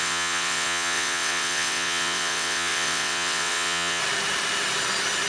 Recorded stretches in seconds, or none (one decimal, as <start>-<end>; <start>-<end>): 4.0-5.3